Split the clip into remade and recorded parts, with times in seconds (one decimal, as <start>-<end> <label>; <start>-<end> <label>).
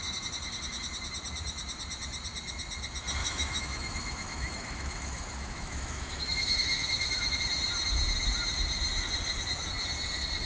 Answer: 0.0-3.2 recorded; 3.2-7.4 remade; 7.4-10.5 recorded